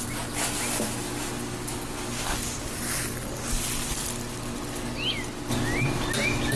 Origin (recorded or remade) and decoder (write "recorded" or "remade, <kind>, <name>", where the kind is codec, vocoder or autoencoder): recorded